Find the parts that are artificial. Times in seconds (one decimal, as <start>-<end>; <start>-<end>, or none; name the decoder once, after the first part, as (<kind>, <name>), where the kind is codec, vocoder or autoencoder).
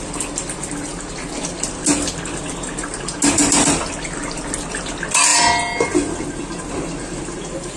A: none